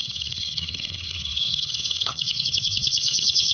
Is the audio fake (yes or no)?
yes